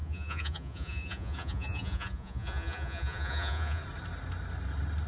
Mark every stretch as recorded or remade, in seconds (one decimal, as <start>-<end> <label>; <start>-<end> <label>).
0.0-3.8 remade; 3.8-5.1 recorded